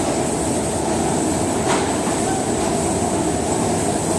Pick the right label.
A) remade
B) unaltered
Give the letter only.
B